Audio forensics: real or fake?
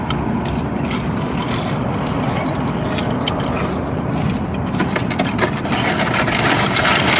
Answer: real